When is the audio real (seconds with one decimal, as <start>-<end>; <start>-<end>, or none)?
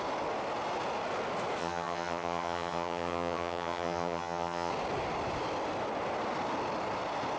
0.0-1.6; 4.7-7.4